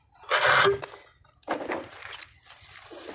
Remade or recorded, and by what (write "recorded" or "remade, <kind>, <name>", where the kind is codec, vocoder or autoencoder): recorded